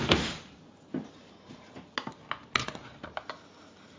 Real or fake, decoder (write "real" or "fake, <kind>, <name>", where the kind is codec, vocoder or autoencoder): real